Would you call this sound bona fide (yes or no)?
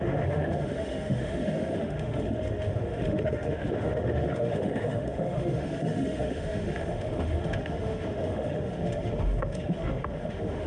no